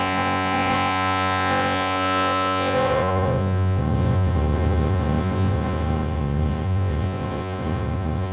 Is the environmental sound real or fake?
fake